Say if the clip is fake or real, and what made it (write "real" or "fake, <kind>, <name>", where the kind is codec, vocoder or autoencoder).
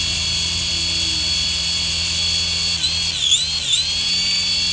real